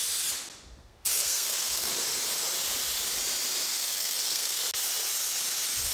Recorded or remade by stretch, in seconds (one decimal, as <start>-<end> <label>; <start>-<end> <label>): 0.0-0.8 recorded; 0.8-1.9 remade; 1.9-3.7 recorded; 3.7-4.6 remade; 4.6-5.9 recorded